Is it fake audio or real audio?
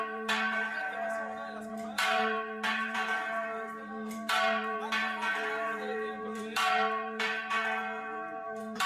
fake